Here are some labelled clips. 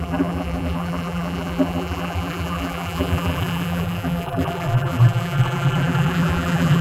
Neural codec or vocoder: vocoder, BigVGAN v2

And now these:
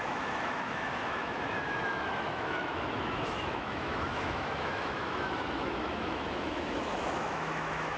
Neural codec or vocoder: autoencoder, DAC-VAE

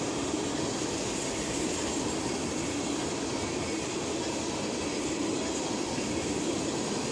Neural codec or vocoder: none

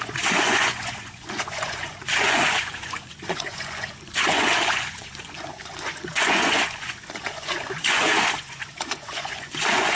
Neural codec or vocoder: vocoder, Vocos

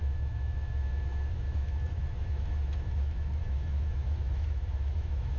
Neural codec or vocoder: autoencoder, DAC-VAE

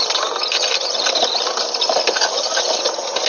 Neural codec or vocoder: none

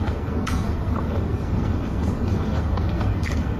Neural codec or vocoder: codec, SNAC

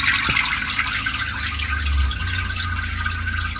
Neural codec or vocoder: none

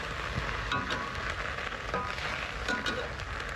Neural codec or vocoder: none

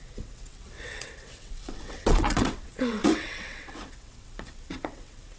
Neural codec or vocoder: vocoder, WaveNeXt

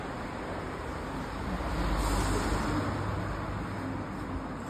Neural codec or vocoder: none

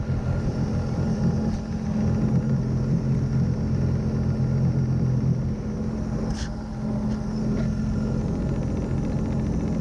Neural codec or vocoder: none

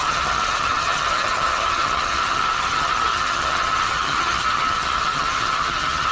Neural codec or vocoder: vocoder, HiFi-GAN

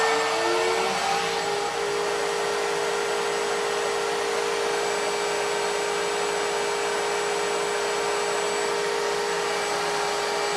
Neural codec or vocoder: none